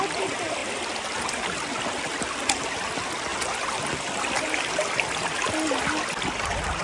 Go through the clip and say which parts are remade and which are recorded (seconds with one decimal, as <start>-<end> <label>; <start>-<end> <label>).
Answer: 0.0-0.6 recorded; 0.6-2.6 remade; 2.6-6.8 recorded